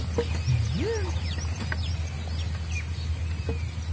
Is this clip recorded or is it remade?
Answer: recorded